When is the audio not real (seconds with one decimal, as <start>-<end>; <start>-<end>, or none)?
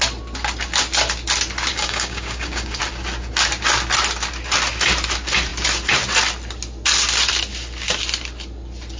1.7-2.8